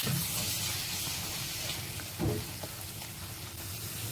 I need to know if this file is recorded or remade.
recorded